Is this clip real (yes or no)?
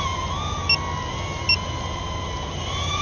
yes